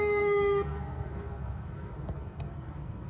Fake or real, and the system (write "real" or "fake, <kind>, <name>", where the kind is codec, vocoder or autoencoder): fake, codec, SNAC